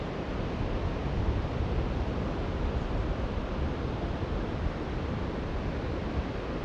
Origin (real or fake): real